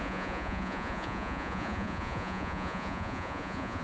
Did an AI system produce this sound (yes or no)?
yes